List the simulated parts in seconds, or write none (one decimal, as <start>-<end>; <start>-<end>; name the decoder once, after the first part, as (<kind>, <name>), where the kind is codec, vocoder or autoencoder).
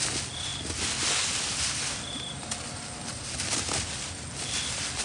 none